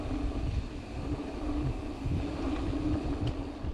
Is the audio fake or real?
real